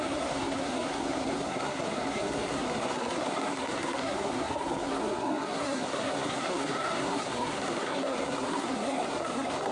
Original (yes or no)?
no